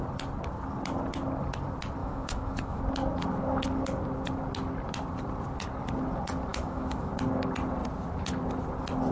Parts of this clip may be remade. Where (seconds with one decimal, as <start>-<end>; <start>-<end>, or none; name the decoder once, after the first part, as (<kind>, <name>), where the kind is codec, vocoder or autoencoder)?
2.0-2.8 (autoencoder, DAC-VAE); 6.5-7.1